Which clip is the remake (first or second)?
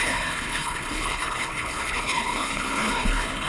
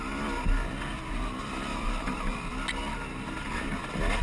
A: first